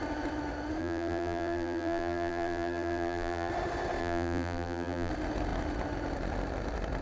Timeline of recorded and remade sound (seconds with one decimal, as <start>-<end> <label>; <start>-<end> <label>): 0.0-0.8 recorded; 0.8-3.5 remade; 3.5-4.0 recorded; 4.0-5.1 remade; 5.1-7.0 recorded